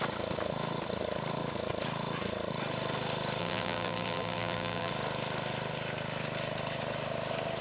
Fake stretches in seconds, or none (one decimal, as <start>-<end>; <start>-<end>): 3.4-4.9